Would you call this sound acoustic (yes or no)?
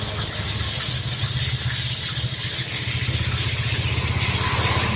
yes